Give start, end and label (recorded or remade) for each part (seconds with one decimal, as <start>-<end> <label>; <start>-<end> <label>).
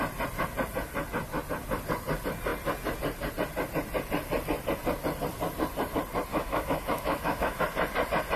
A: 0.0-6.3 recorded; 6.3-7.6 remade; 7.6-8.4 recorded